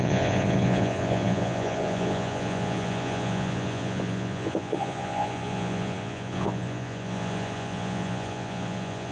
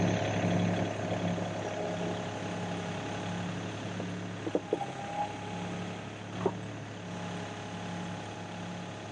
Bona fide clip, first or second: second